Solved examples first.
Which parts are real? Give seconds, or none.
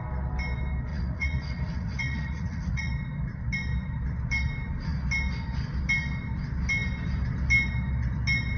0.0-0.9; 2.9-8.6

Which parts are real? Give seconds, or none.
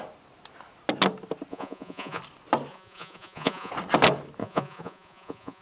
0.0-1.5; 2.2-2.7; 3.7-4.4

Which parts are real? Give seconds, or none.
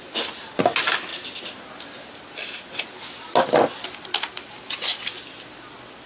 0.0-6.1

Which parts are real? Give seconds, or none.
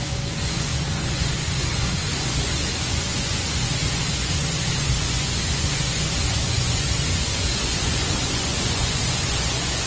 none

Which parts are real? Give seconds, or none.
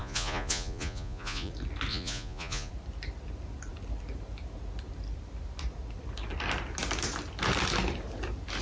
1.5-1.9; 2.7-8.6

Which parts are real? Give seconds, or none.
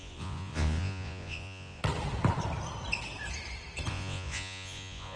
1.8-3.9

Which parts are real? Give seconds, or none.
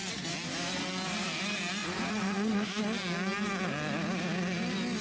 0.0-1.8; 2.8-5.0